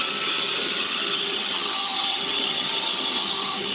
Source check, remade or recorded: remade